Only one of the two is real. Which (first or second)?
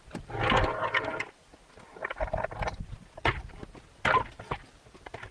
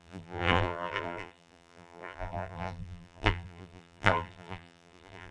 first